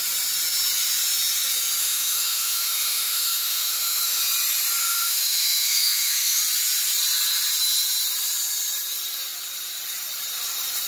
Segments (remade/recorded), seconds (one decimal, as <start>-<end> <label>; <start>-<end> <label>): 0.0-1.8 recorded; 1.8-4.2 remade; 4.2-4.8 recorded; 4.8-6.4 remade; 6.4-10.9 recorded